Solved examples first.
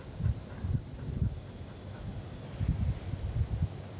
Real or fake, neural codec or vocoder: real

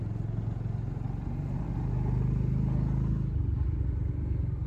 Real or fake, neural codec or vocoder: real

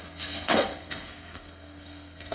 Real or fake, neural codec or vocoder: fake, codec, SNAC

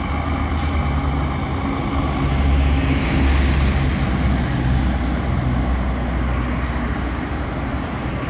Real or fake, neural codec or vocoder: real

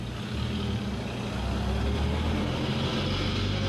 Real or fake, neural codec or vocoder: real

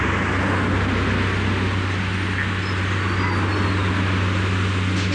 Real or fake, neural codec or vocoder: real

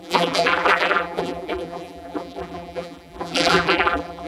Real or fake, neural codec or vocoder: fake, vocoder, BigVGAN v2